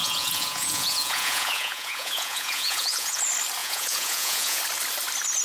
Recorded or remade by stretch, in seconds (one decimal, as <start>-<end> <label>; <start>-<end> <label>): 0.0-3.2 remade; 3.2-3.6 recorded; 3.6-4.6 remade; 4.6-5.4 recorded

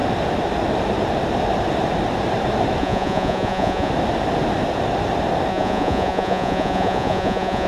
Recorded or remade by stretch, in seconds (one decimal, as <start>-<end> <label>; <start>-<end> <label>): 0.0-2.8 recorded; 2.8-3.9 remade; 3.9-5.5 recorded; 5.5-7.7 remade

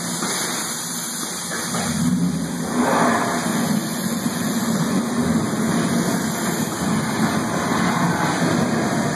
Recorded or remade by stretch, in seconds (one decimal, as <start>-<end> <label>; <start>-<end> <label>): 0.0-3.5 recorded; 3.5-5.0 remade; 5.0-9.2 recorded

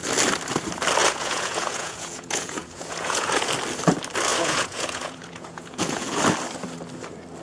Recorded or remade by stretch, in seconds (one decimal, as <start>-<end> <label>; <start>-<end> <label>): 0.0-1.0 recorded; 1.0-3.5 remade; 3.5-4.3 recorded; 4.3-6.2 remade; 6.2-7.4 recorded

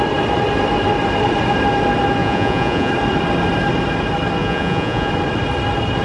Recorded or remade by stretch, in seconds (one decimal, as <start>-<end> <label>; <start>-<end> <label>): 0.0-2.2 recorded; 2.2-2.9 remade; 2.9-4.4 recorded; 4.4-5.1 remade; 5.1-6.0 recorded

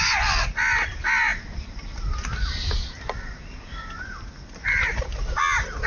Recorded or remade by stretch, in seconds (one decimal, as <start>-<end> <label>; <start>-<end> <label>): 0.0-5.9 recorded

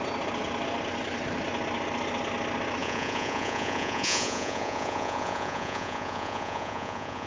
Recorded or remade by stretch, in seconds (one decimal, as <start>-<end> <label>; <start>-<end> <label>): 0.0-2.8 recorded; 2.8-7.3 remade